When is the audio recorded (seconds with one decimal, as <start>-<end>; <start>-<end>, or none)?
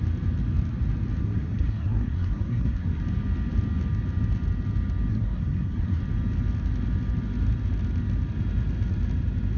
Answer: 0.0-1.2; 3.0-5.1; 6.0-9.6